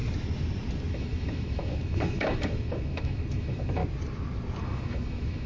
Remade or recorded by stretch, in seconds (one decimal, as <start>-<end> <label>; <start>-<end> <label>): 0.0-0.9 recorded; 0.9-3.8 remade; 3.8-4.6 recorded; 4.6-5.5 remade